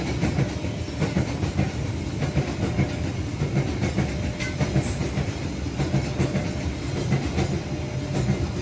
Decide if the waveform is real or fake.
real